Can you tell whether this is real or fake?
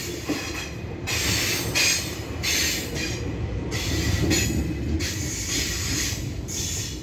real